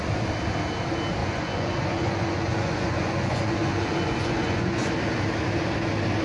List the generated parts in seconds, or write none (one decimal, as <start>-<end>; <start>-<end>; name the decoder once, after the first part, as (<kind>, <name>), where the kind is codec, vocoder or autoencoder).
1.2-4.9 (vocoder, Vocos)